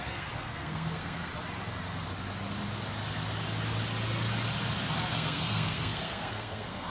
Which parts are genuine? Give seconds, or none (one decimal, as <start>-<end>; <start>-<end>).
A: 1.3-5.1